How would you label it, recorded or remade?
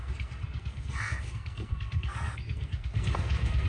remade